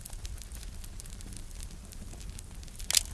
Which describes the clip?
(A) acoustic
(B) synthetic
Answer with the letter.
A